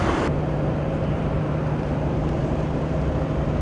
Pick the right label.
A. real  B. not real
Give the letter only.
B